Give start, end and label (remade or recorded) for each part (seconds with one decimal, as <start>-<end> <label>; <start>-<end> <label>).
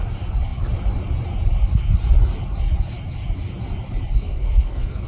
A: 0.0-4.2 recorded; 4.2-5.1 remade